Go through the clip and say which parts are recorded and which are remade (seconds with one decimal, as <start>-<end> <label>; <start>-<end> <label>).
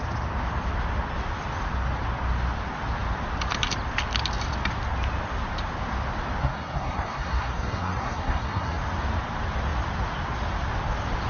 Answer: 0.0-6.4 recorded; 6.4-8.8 remade; 8.8-11.3 recorded